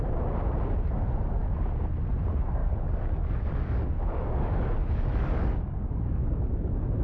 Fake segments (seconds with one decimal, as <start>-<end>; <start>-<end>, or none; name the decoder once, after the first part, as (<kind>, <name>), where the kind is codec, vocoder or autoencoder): 2.6-6.4 (codec, DAC)